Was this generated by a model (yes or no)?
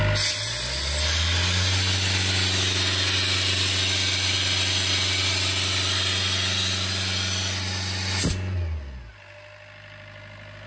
no